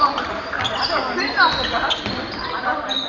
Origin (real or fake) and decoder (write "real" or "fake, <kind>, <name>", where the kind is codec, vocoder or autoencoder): real